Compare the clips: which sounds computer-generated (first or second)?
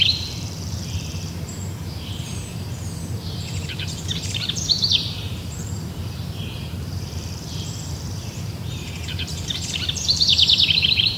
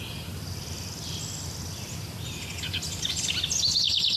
first